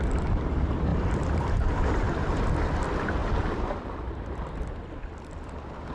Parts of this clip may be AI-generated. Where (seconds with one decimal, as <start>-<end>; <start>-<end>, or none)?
0.9-2.5